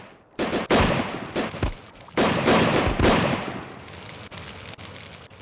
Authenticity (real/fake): real